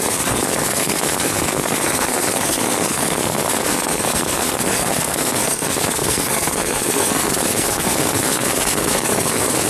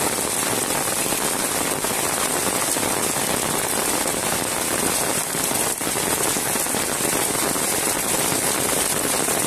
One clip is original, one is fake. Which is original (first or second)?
second